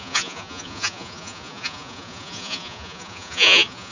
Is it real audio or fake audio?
fake